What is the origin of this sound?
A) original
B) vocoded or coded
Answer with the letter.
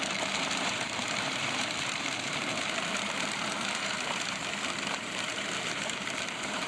B